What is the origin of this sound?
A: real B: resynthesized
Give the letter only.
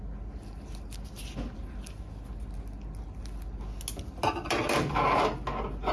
A